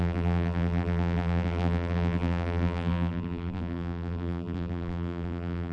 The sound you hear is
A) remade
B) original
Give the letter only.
A